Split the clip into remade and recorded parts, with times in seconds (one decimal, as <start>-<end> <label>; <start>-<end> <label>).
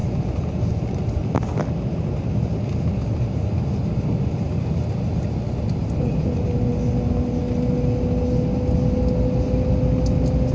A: 0.0-10.5 recorded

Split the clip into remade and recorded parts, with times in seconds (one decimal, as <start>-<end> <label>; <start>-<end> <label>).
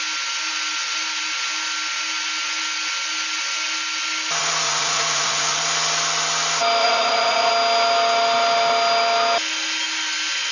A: 0.0-4.4 recorded; 4.4-5.6 remade; 5.6-6.8 recorded; 6.8-7.5 remade; 7.5-10.5 recorded